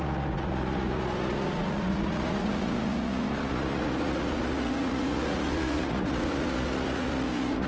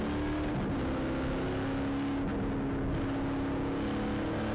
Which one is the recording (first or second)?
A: second